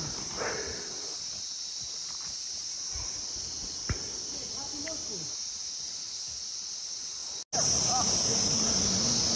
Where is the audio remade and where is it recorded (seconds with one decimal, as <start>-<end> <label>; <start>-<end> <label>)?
0.0-9.4 recorded